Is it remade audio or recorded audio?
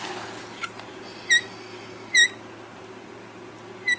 recorded